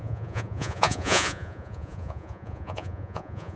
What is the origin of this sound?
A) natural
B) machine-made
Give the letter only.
B